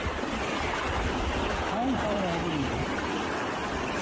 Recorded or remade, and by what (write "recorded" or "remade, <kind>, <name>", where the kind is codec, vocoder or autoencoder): recorded